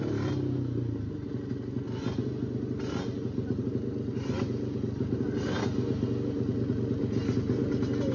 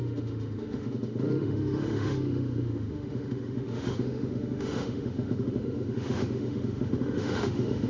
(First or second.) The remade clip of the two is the second